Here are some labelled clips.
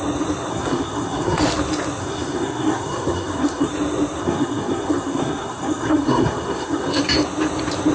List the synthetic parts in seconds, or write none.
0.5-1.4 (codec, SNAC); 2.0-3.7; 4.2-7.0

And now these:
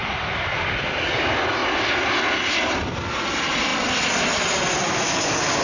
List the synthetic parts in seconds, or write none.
0.0-0.7 (vocoder, BigVGAN v2); 3.7-4.3